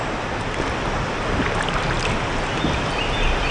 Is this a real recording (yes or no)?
yes